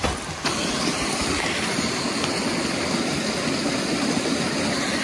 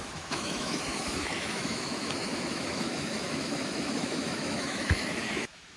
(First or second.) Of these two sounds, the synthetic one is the second